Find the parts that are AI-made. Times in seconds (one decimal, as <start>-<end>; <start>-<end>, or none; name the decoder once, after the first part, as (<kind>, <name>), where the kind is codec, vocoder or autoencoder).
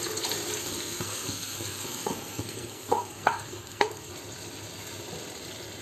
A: 0.6-4.1 (codec, SNAC)